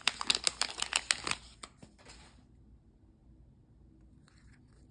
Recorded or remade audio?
recorded